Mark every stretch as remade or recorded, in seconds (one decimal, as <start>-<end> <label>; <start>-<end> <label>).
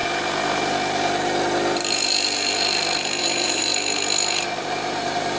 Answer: 0.0-3.2 recorded; 3.2-3.7 remade; 3.7-4.6 recorded; 4.6-5.4 remade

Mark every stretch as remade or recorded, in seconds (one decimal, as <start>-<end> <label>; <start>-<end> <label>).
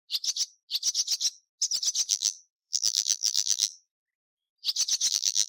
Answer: 0.0-2.1 recorded; 2.1-4.0 remade; 4.0-5.1 recorded; 5.1-5.5 remade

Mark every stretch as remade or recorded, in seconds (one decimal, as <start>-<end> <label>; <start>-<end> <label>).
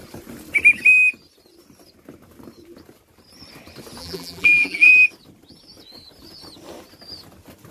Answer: 0.0-4.0 recorded; 4.0-4.9 remade; 4.9-7.7 recorded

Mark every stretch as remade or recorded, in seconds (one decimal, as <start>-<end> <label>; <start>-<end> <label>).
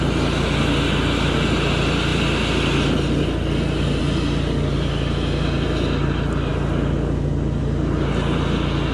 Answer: 0.0-8.9 recorded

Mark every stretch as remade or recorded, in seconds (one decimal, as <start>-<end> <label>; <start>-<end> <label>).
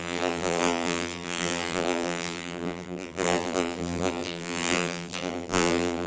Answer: 0.0-6.1 remade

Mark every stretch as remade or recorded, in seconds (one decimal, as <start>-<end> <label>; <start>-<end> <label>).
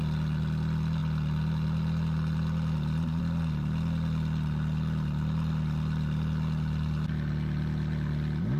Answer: 0.0-8.6 recorded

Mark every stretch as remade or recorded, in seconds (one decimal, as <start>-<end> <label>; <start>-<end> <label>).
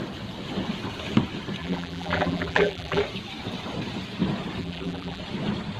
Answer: 0.0-1.6 recorded; 1.6-3.0 remade; 3.0-4.6 recorded; 4.6-5.2 remade; 5.2-5.8 recorded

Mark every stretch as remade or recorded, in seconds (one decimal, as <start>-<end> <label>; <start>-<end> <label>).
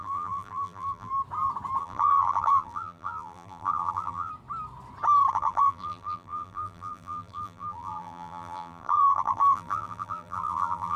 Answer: 0.0-1.1 remade; 1.1-1.8 recorded; 1.8-4.3 remade; 4.3-5.3 recorded; 5.3-11.0 remade